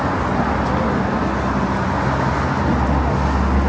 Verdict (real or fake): real